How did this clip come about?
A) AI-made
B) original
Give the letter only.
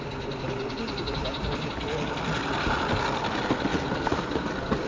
B